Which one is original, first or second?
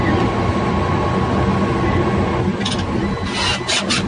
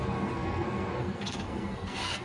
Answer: first